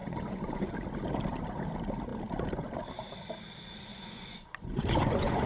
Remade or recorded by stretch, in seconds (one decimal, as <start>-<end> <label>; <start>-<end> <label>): 0.0-0.7 remade; 0.7-3.9 recorded; 3.9-5.5 remade